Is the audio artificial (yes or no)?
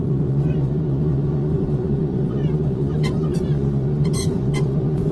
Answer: yes